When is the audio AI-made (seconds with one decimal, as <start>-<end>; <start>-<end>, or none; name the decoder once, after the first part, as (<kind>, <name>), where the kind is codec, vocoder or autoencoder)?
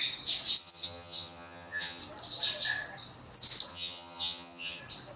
0.6-2.0 (vocoder, HiFi-GAN); 3.7-4.8